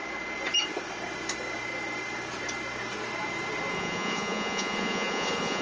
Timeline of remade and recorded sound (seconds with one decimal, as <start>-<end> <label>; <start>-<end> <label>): 0.0-3.7 recorded; 3.7-5.6 remade